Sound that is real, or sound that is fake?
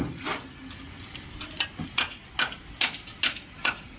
real